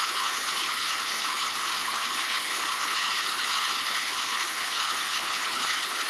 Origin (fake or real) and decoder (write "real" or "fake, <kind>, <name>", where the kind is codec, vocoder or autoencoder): fake, codec, HILCodec